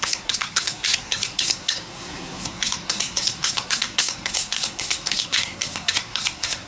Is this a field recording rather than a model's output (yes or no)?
no